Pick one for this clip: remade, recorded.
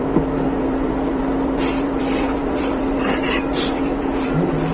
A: remade